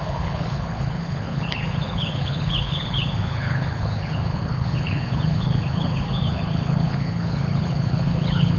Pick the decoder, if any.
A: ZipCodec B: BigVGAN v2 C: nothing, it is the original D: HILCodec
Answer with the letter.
D